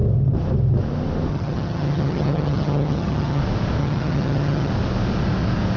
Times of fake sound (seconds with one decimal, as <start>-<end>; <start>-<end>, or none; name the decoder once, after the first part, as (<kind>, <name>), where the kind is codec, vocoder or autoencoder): 1.3-3.4 (vocoder, HiFi-GAN); 3.8-4.7